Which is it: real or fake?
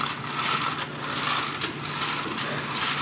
real